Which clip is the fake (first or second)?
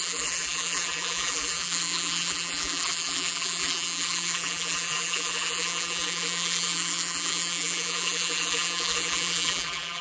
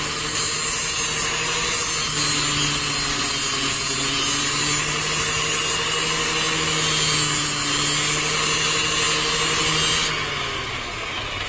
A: first